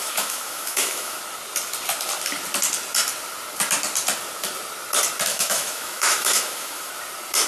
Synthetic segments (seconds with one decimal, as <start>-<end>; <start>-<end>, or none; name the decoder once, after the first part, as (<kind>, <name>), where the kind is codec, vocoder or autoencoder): 0.0-1.2 (autoencoder, DAC-VAE); 5.3-6.9